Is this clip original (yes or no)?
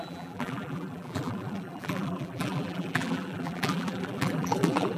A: no